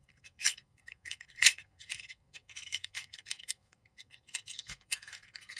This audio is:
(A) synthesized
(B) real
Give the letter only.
A